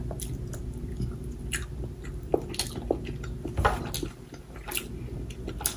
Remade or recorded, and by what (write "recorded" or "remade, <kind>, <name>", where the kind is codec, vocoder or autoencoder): recorded